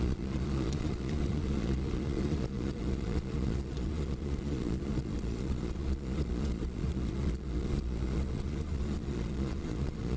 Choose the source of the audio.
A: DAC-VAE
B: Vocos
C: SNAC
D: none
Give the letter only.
B